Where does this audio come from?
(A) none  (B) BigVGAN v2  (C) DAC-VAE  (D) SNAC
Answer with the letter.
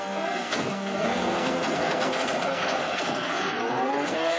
D